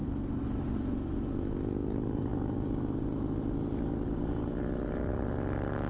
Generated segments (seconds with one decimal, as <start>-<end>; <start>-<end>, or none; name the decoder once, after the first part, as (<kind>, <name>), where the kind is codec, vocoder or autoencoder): none

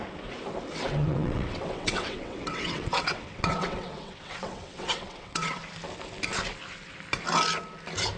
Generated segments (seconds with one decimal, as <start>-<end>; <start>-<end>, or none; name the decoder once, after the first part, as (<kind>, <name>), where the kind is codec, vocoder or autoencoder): 0.7-5.6 (vocoder, WaveNeXt)

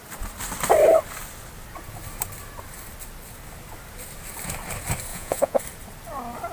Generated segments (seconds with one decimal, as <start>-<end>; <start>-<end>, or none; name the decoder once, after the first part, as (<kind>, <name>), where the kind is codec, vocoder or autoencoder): 5.1-5.6 (vocoder, Vocos)

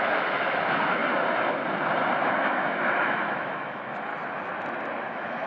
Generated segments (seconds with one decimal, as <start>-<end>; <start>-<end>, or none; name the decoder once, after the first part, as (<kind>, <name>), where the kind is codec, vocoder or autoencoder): 0.0-1.0 (autoencoder, DAC-VAE); 2.4-4.1; 5.1-5.5

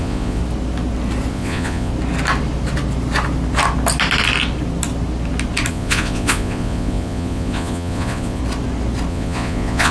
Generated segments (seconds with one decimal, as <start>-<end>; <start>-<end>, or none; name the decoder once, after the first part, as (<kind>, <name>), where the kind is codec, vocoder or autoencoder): 0.0-0.4 (vocoder, Vocos); 1.3-1.9; 5.7-8.4; 9.1-9.9